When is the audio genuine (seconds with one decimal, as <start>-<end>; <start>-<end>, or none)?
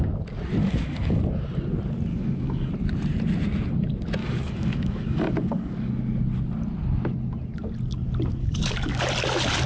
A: 0.0-0.6; 1.2-2.1; 2.7-4.2; 5.9-8.4; 9.0-9.7